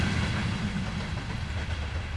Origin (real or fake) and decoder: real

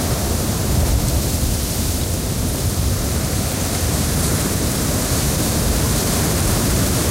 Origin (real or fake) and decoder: fake, vocoder, BigVGAN v2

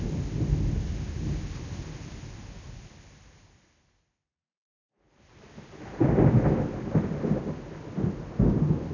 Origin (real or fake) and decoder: real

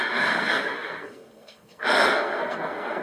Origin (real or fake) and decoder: fake, codec, SNAC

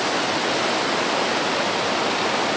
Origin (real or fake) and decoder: real